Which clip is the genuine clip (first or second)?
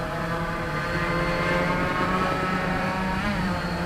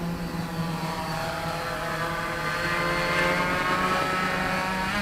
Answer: second